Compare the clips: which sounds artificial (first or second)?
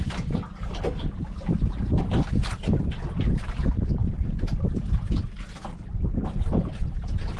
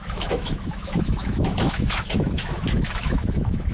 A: second